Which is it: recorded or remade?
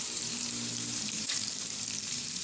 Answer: remade